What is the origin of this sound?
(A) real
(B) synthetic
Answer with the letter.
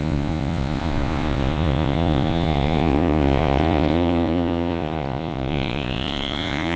B